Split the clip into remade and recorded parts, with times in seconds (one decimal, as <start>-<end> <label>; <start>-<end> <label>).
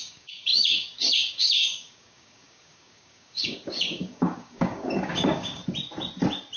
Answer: 0.0-5.6 remade; 5.6-6.6 recorded